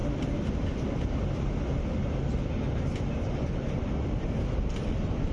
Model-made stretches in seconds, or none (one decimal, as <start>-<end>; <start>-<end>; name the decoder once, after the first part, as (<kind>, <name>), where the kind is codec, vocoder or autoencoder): 3.2-5.3 (vocoder, BigVGAN v2)